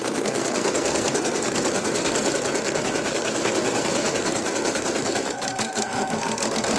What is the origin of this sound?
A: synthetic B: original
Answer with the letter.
A